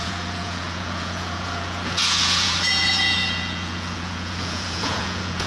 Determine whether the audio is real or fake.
fake